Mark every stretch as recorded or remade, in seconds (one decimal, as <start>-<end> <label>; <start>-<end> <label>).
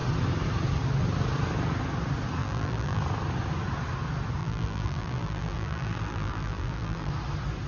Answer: 0.0-2.4 recorded; 2.4-3.0 remade; 3.0-4.4 recorded; 4.4-7.1 remade; 7.1-7.7 recorded